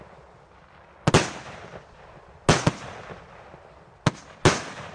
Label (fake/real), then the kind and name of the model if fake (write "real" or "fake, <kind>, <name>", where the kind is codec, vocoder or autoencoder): real